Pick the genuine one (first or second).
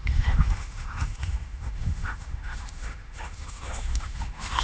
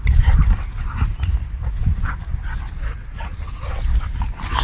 second